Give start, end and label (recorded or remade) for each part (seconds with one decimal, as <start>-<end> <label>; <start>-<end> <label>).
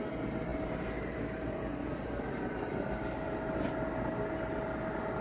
0.0-5.2 recorded